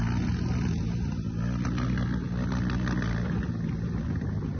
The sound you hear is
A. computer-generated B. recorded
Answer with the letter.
B